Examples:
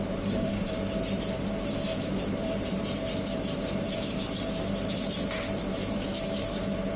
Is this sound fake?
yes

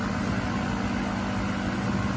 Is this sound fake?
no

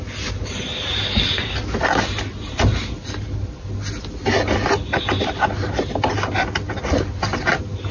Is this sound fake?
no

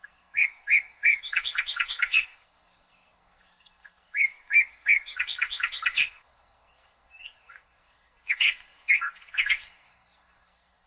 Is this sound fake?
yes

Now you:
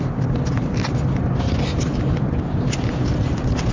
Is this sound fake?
no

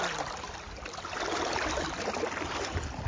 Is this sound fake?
no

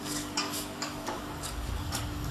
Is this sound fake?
yes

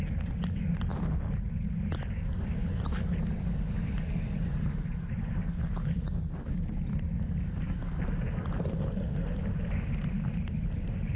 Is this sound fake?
no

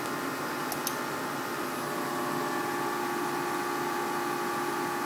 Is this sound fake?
no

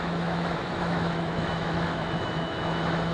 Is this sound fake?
yes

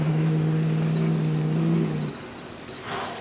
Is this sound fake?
no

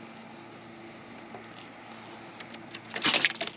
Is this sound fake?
no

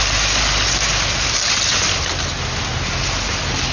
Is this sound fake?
no